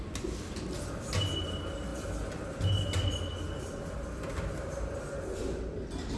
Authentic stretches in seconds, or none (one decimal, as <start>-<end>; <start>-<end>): 0.0-6.2